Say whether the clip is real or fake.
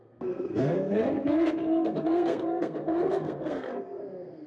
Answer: fake